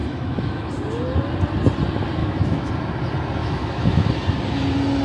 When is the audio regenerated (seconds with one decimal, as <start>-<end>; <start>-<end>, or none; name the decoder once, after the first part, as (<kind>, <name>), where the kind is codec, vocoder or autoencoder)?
0.0-0.7 (autoencoder, DAC-VAE); 2.2-2.7; 3.4-4.1